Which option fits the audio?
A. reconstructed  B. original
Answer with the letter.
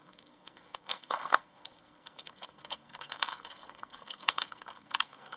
A